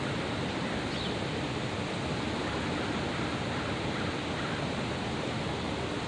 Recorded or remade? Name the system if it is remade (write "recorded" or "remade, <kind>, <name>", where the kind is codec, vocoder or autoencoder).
recorded